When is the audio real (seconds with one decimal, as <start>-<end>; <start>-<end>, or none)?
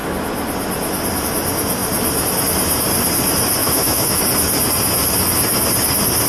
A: 0.0-3.6; 4.2-6.3